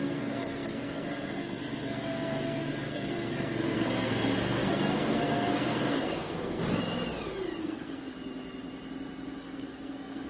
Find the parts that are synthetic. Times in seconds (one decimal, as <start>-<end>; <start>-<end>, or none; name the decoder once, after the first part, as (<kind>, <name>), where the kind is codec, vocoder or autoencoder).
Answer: 0.0-6.6 (codec, SNAC); 7.6-8.1; 9.4-10.3

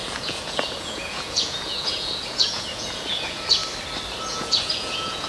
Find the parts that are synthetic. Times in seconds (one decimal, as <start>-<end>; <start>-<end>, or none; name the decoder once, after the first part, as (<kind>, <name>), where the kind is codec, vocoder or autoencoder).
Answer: 0.0-3.6 (vocoder, Vocos); 4.3-5.3